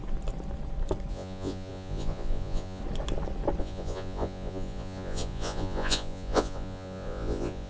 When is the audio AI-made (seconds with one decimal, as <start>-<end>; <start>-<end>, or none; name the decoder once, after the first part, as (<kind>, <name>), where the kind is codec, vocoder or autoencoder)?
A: 1.1-2.8 (vocoder, Vocos); 3.6-7.7

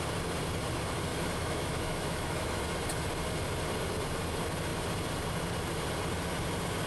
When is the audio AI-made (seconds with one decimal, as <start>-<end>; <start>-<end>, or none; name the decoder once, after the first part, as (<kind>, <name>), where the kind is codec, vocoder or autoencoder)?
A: 1.1-2.6 (autoencoder, DAC-VAE)

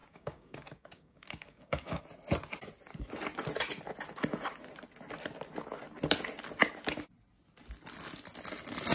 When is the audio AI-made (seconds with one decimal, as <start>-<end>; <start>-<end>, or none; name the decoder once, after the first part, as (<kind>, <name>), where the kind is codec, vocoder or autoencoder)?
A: 0.0-2.0 (codec, DAC)

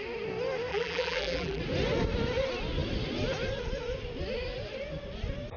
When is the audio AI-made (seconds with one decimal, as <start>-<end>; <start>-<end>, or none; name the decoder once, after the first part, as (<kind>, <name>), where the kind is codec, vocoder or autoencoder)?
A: 0.7-1.6 (vocoder, BigVGAN v2)

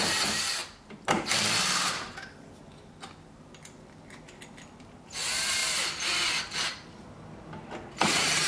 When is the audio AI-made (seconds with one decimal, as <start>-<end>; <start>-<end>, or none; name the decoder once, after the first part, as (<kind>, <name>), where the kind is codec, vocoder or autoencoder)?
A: 5.6-7.0 (vocoder, BigVGAN v2)

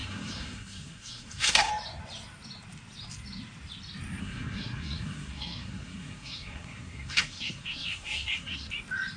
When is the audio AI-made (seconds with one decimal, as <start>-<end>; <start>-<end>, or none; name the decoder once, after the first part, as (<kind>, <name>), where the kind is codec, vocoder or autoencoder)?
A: 0.0-1.7 (codec, SNAC); 4.2-8.7

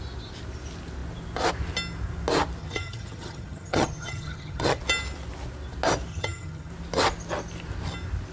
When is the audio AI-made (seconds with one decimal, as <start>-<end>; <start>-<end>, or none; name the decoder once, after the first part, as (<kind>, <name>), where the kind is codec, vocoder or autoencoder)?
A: 2.6-4.8 (vocoder, HiFi-GAN); 6.1-6.7

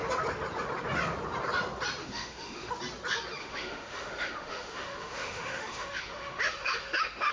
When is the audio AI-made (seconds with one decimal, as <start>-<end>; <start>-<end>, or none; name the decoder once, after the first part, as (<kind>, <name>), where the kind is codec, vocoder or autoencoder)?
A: 2.0-2.7 (autoencoder, DAC-VAE); 3.4-7.3